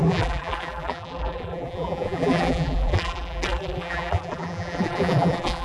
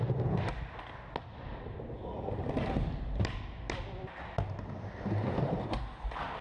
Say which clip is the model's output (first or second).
first